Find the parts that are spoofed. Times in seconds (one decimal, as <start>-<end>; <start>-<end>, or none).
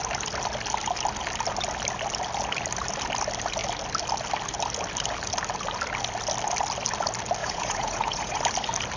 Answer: 7.4-8.4